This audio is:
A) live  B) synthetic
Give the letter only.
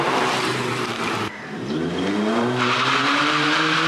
B